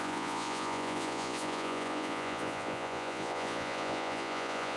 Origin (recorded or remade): remade